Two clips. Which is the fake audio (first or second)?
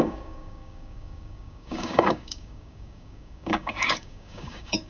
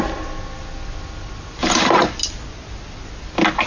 first